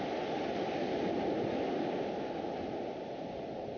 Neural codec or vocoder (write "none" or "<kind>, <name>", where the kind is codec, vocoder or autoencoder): none